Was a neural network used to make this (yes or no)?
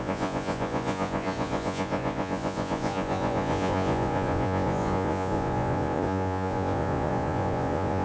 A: yes